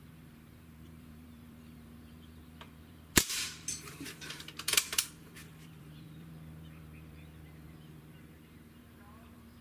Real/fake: fake